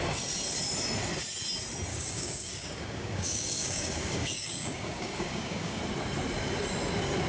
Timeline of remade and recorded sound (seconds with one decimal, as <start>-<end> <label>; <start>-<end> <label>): 0.0-1.9 recorded; 1.9-5.8 remade; 5.8-7.3 recorded